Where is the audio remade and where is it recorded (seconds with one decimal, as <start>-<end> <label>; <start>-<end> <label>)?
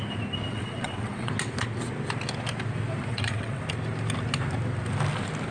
0.0-0.5 recorded; 0.5-1.3 remade; 1.3-3.1 recorded; 3.1-3.6 remade; 3.6-5.5 recorded